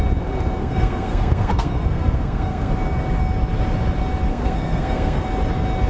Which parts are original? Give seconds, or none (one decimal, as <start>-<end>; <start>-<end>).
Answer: 0.0-0.6; 2.7-4.3; 5.2-5.9